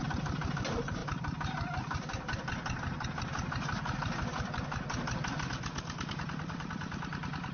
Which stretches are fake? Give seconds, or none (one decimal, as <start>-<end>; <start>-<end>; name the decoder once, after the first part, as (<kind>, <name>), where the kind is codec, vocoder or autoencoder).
0.0-7.5 (vocoder, BigVGAN v2)